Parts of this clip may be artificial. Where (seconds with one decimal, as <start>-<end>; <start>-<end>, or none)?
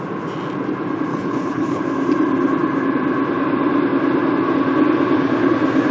1.1-1.8